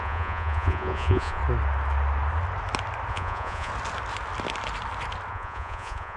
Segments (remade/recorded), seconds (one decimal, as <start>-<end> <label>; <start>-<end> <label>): 0.0-1.4 remade; 1.4-3.1 recorded; 3.1-3.7 remade; 3.7-5.3 recorded; 5.3-6.2 remade